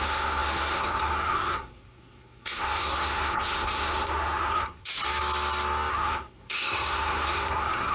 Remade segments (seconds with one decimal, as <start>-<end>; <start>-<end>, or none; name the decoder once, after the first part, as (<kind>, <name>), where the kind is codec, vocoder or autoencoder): 0.0-4.9 (codec, SNAC); 5.9-7.9